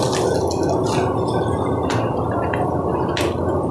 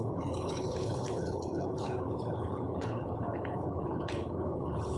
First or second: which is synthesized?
second